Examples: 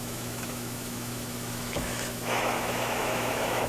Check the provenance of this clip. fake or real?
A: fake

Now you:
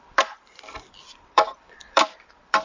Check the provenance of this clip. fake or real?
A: fake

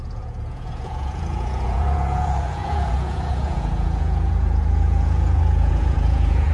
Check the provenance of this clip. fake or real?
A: fake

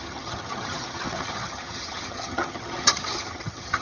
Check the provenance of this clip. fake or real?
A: fake